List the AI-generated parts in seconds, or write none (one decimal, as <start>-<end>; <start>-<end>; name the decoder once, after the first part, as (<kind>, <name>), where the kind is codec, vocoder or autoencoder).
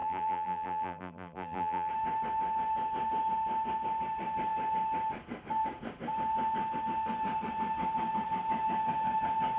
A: 0.0-1.9 (vocoder, BigVGAN v2)